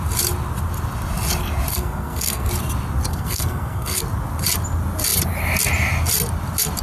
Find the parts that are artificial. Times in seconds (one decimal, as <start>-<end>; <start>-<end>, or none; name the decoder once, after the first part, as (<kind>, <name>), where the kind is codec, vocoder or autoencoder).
1.7-2.5 (codec, SNAC); 3.1-4.0

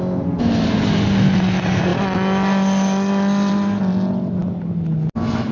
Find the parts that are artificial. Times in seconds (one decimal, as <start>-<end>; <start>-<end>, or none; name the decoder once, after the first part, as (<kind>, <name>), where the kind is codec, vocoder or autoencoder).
none

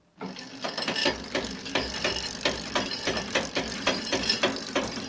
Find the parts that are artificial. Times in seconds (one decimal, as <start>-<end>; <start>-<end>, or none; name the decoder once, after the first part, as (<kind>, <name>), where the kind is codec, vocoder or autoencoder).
none

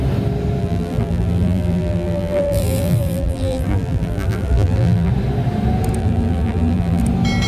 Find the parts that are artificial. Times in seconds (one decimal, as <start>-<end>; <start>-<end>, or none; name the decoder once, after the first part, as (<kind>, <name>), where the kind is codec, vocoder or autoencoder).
0.6-5.1 (vocoder, BigVGAN v2); 6.0-7.0

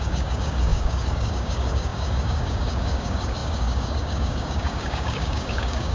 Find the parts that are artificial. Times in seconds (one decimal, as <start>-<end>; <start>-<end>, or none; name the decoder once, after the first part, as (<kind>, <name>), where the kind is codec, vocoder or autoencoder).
0.0-5.9 (codec, DAC)

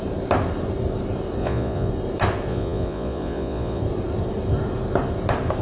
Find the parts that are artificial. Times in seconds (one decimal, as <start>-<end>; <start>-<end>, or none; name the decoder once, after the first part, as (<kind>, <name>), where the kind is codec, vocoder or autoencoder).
1.4-1.9 (vocoder, Vocos); 2.5-3.8